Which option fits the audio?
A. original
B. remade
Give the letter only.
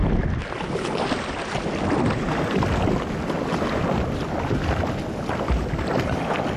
A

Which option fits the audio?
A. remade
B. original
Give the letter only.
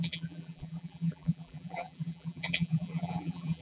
A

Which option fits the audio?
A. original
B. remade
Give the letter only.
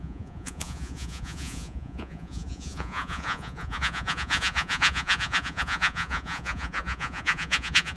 B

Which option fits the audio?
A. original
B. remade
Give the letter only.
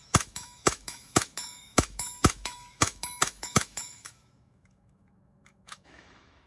B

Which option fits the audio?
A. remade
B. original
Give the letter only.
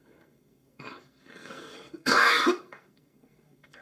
A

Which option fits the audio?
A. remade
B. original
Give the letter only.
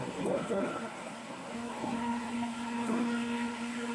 A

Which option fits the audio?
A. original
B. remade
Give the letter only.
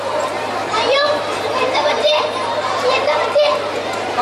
B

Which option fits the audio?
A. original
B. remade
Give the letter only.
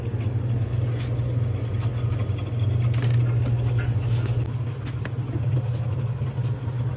A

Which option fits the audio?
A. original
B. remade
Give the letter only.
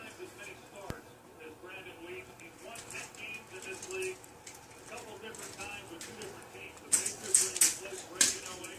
A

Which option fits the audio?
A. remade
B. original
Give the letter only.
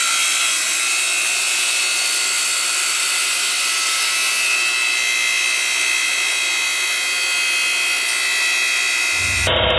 B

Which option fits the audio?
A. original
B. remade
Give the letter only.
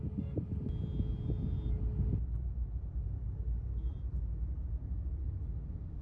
A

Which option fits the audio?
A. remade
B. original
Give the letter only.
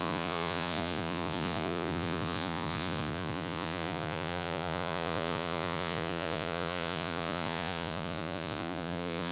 A